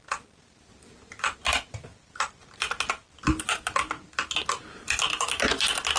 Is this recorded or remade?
recorded